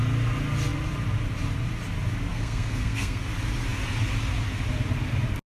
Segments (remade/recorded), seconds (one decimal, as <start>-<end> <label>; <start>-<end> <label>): 0.0-2.3 recorded; 2.3-3.2 remade; 3.2-5.6 recorded